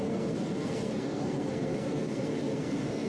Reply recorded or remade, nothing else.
remade